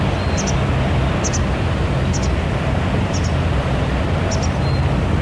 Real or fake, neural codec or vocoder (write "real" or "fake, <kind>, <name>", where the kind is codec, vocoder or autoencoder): real